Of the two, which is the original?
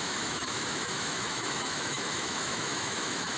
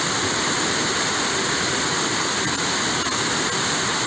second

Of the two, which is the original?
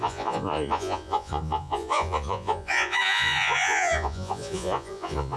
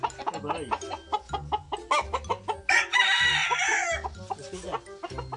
second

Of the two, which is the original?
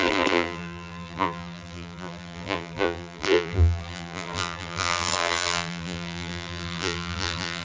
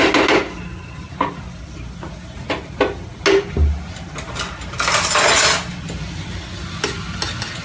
second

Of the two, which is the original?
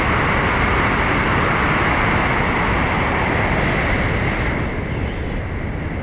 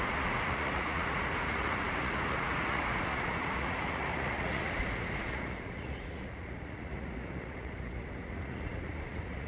first